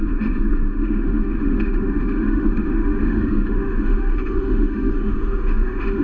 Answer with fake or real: fake